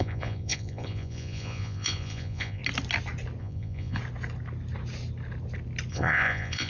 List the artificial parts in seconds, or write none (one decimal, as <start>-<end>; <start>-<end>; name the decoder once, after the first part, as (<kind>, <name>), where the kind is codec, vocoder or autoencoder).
0.0-2.6 (vocoder, Vocos); 3.4-4.0; 5.9-6.7